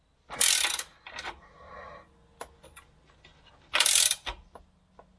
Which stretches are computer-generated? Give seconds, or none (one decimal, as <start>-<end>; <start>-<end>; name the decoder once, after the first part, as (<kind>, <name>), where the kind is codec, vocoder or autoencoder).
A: none